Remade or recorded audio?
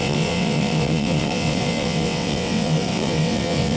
remade